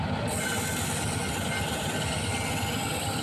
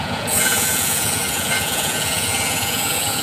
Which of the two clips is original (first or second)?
first